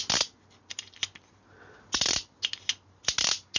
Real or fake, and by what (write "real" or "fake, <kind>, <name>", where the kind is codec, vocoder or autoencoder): real